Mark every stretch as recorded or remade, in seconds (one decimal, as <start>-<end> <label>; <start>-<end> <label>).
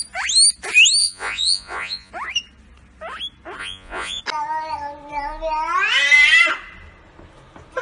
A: 0.0-1.0 recorded; 1.0-2.1 remade; 2.1-3.6 recorded; 3.6-4.2 remade; 4.2-7.8 recorded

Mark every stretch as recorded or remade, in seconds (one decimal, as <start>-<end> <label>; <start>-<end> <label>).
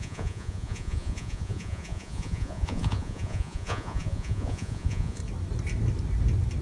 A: 0.0-5.2 remade; 5.2-6.6 recorded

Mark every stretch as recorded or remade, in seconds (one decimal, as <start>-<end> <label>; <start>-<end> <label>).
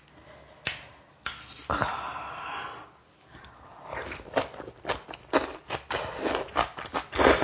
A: 0.0-7.4 recorded